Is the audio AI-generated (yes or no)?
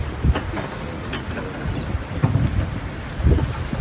no